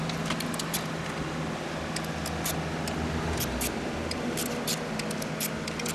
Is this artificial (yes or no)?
no